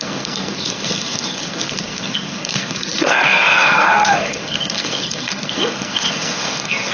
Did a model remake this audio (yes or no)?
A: yes